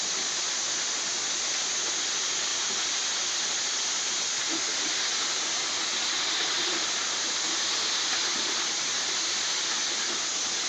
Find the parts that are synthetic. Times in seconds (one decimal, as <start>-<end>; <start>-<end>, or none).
none